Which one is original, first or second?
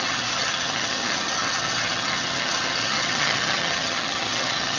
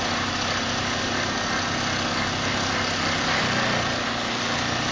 second